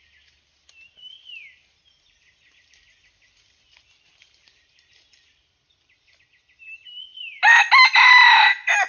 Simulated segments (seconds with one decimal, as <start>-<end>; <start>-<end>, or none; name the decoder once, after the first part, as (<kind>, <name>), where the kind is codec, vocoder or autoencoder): 7.1-7.7 (vocoder, BigVGAN v2)